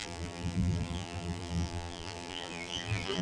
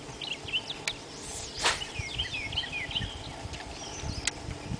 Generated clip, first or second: first